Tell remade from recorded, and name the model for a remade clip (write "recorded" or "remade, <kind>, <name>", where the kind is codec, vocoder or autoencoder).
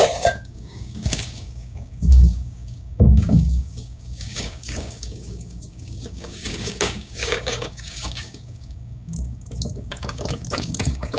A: remade, codec, DAC